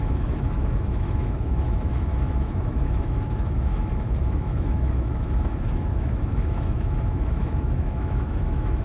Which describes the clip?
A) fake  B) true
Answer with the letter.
A